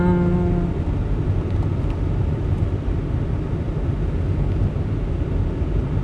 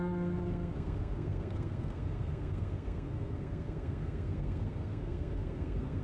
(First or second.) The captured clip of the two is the first